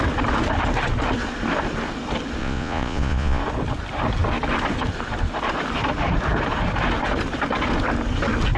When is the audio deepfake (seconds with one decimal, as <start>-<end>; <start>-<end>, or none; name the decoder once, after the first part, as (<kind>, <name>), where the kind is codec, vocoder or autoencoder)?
2.4-3.4 (vocoder, Vocos)